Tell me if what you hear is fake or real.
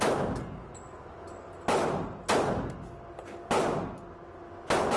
real